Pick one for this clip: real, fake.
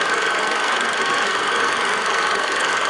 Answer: fake